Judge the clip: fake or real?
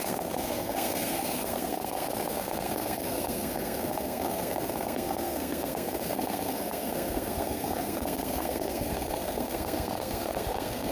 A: fake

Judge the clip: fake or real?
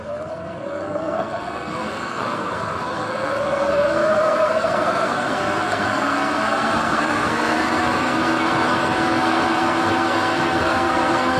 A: fake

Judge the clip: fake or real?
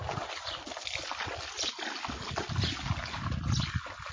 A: real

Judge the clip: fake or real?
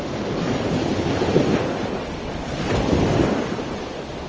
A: real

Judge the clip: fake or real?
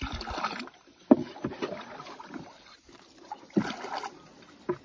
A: real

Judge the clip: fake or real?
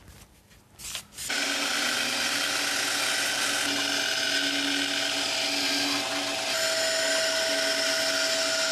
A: real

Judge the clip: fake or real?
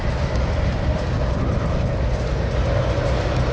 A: real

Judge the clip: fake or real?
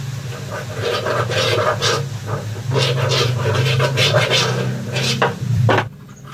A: fake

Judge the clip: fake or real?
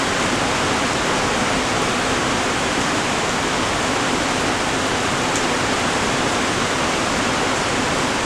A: fake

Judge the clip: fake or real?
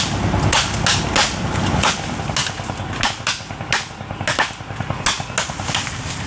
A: real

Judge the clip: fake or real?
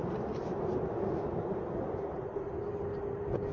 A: real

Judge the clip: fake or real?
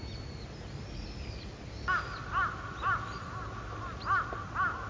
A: real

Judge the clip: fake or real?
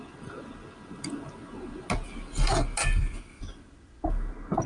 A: real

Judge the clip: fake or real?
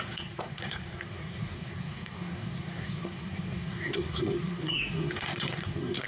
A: fake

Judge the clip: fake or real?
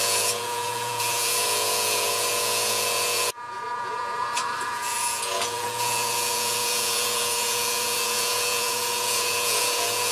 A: fake